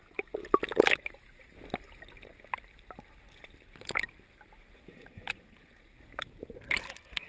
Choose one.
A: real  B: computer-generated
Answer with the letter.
A